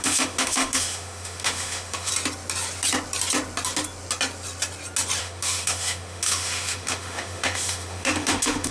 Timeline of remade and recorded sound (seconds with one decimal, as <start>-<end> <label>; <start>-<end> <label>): 0.0-2.1 remade; 2.1-5.2 recorded; 5.2-8.7 remade